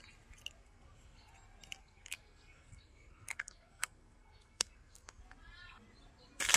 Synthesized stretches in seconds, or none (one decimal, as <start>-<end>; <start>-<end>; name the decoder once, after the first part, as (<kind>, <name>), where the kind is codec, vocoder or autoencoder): 0.6-1.3 (codec, SNAC); 1.8-5.2